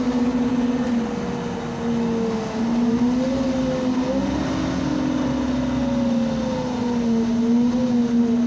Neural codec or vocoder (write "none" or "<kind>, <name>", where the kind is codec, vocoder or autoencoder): none